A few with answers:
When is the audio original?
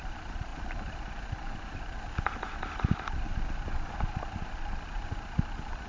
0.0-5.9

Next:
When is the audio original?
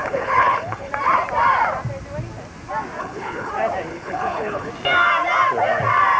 0.9-3.0; 3.5-3.9; 4.7-6.2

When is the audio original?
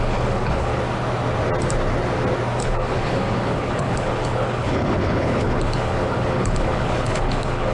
0.7-2.6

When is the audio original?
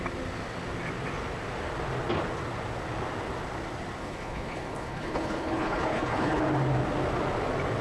0.0-4.0; 6.4-7.8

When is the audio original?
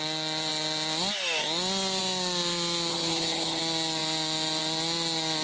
0.0-2.9; 3.6-5.4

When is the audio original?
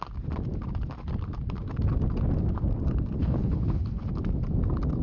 0.0-3.2; 4.1-5.0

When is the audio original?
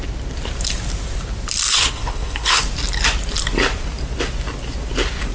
0.0-1.7; 2.6-5.3